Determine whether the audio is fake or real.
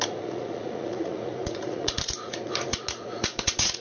fake